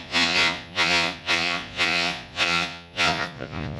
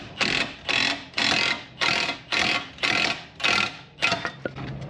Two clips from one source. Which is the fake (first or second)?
first